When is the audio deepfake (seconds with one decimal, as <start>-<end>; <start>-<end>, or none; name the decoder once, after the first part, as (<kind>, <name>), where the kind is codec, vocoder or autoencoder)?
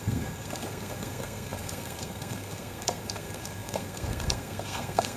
0.0-5.2 (codec, SNAC)